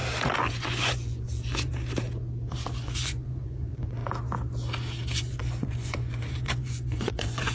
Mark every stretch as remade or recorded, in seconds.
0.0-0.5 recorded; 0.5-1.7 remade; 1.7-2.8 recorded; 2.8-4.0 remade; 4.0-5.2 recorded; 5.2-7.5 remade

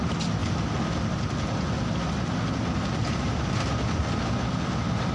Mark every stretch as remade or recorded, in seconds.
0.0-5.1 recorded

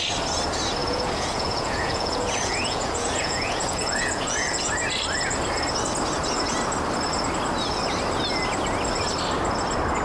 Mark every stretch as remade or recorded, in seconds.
0.0-0.8 recorded; 0.8-4.7 remade; 4.7-10.0 recorded

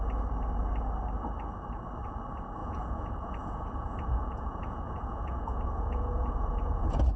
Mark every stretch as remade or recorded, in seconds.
0.0-2.6 recorded; 2.6-7.2 remade

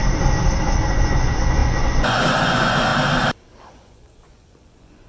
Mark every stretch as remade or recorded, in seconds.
0.0-0.9 recorded; 0.9-2.9 remade; 2.9-3.7 recorded; 3.7-5.1 remade

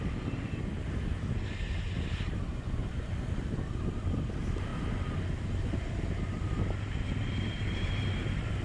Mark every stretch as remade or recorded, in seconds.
0.0-2.5 recorded; 2.5-3.1 remade; 3.1-8.6 recorded

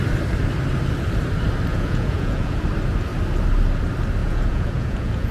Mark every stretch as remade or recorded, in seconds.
0.0-1.7 recorded; 1.7-2.6 remade; 2.6-4.2 recorded; 4.2-5.3 remade